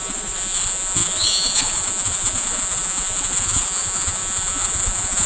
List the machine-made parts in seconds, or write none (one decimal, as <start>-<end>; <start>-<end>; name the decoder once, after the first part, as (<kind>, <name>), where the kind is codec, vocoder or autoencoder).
0.0-5.3 (vocoder, Vocos)